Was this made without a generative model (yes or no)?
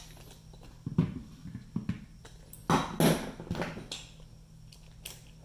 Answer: yes